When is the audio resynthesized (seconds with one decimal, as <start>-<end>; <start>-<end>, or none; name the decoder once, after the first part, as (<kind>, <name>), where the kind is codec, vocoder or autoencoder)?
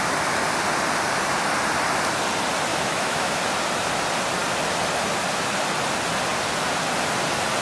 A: 2.7-3.4 (autoencoder, DAC-VAE)